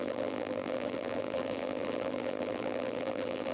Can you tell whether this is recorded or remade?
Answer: remade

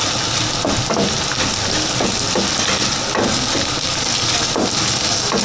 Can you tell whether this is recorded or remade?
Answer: recorded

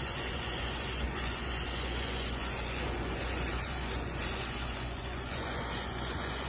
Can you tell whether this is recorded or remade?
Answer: remade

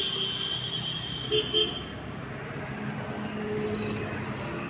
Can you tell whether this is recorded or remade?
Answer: recorded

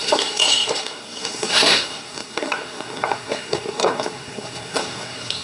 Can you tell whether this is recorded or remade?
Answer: remade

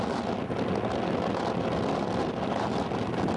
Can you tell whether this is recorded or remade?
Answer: recorded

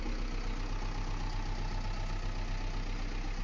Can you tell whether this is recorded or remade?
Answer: recorded